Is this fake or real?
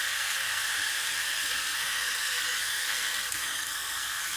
fake